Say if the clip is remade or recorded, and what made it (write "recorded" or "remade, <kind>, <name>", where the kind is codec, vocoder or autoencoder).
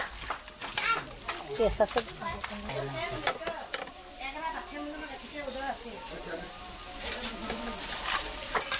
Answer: recorded